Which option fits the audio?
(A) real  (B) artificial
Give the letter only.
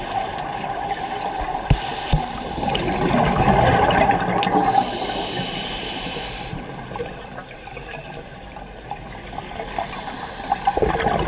A